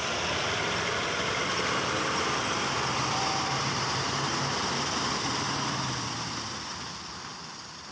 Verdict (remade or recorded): remade